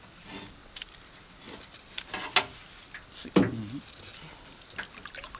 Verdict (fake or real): real